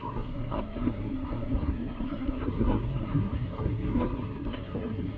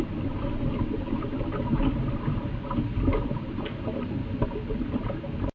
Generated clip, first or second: first